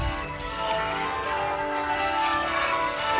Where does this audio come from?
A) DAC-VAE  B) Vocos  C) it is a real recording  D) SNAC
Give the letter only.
D